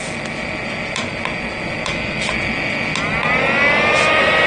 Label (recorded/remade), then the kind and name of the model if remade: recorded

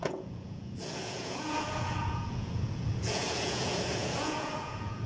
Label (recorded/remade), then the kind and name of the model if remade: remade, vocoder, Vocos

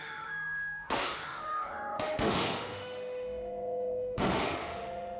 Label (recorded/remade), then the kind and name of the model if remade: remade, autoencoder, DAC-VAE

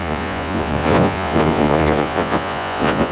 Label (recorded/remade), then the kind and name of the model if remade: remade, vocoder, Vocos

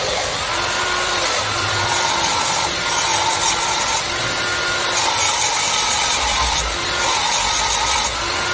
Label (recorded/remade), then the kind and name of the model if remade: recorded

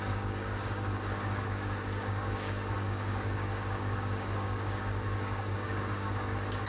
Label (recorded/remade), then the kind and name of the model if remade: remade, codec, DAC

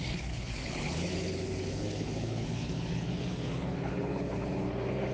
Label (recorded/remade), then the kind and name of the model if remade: remade, codec, HILCodec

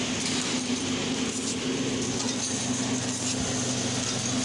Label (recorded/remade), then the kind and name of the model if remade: recorded